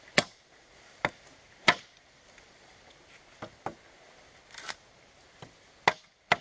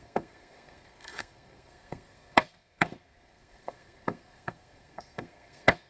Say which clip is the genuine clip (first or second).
first